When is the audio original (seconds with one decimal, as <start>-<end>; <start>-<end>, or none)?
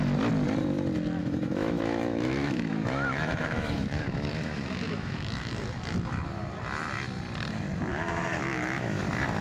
0.0-1.2; 5.5-7.9; 9.0-9.4